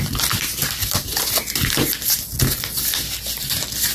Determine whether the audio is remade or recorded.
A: recorded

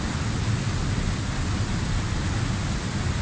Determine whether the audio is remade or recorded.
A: recorded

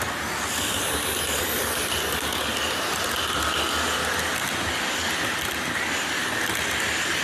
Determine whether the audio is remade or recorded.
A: recorded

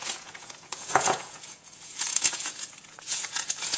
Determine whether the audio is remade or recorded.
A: remade